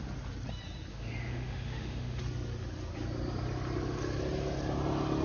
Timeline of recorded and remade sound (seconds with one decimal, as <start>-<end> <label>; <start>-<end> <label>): 0.0-0.9 recorded; 0.9-2.2 remade; 2.2-5.2 recorded